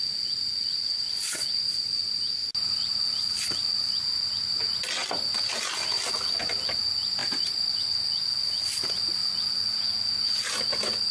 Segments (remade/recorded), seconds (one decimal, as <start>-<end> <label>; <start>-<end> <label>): 0.0-5.0 recorded; 5.0-6.4 remade; 6.4-7.2 recorded; 7.2-7.8 remade; 7.8-11.1 recorded